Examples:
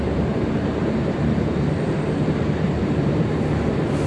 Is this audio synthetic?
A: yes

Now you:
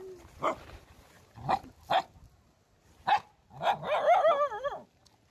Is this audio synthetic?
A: no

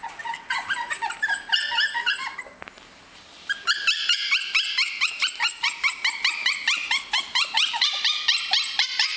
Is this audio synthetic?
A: yes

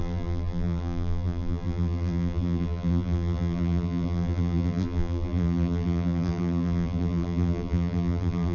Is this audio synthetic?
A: yes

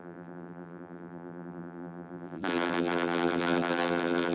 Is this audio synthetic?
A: yes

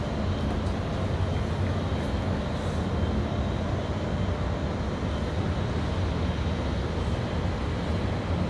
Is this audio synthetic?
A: no